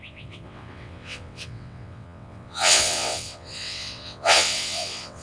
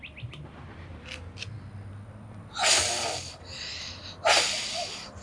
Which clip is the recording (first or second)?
second